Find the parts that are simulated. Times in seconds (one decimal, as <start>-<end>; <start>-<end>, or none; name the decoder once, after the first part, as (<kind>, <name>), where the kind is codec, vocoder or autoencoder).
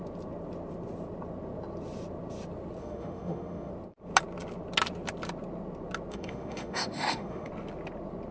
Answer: 2.8-3.7 (autoencoder, DAC-VAE); 6.1-7.5